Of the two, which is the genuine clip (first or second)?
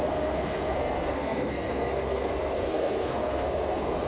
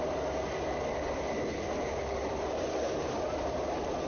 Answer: second